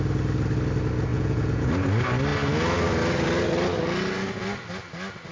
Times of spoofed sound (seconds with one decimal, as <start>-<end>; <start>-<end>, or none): 1.1-1.7